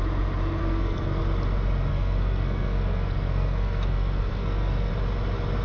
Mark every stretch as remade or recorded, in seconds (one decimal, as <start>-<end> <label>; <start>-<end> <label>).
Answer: 0.0-0.6 recorded; 0.6-1.2 remade; 1.2-1.9 recorded; 1.9-4.9 remade; 4.9-5.6 recorded